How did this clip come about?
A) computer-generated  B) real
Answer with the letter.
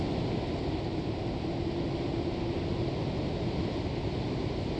B